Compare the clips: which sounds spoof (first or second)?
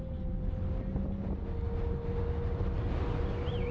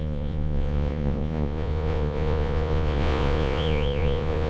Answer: second